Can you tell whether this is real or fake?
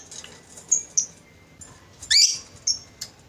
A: real